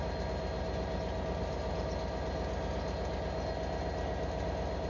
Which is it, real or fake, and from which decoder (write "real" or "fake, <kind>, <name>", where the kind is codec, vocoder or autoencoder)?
real